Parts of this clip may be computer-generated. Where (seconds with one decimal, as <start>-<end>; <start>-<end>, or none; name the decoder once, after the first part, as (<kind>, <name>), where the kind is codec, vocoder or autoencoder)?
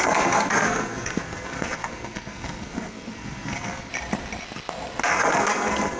0.0-3.9 (codec, SNAC); 5.1-6.0